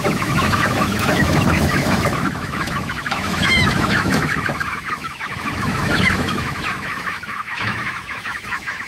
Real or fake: fake